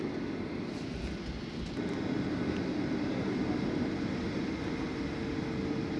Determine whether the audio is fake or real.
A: real